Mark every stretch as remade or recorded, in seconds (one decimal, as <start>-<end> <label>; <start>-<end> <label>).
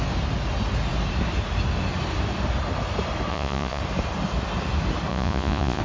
0.0-3.3 recorded; 3.3-3.8 remade; 3.8-5.1 recorded; 5.1-5.8 remade